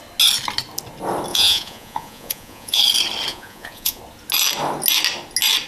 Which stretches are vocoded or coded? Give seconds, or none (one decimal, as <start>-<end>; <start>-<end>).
1.3-2.8; 3.3-4.0